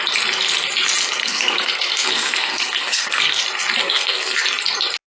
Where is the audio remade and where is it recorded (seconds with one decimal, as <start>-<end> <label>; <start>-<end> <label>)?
0.0-1.2 recorded; 1.2-3.4 remade; 3.4-3.8 recorded; 3.8-4.4 remade; 4.4-5.1 recorded